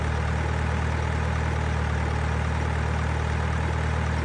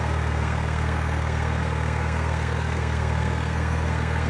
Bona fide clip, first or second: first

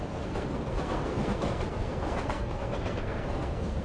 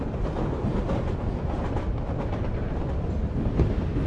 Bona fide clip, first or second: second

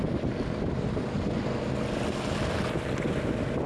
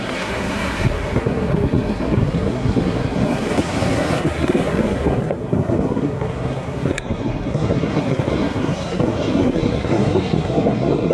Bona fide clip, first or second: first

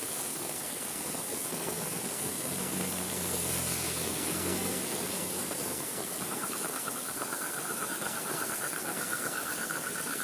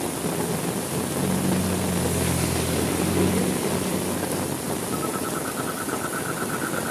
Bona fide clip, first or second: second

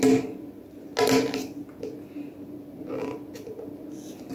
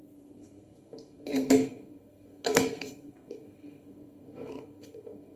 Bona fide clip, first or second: first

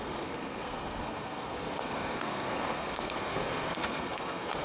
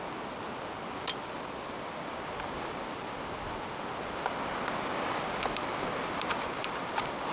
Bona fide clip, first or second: second